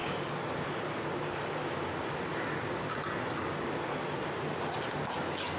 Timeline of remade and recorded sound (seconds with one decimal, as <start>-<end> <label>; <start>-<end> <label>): 0.0-5.6 recorded